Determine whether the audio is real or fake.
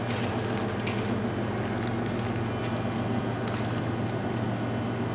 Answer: real